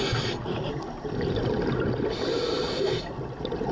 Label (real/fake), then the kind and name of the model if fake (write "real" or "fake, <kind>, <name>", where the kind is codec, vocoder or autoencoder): real